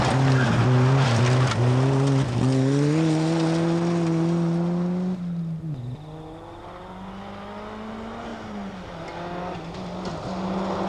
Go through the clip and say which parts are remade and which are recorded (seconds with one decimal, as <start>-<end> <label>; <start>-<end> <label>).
0.0-10.9 recorded